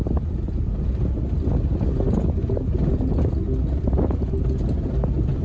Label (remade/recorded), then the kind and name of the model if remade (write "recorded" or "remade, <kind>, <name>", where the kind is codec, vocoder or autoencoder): recorded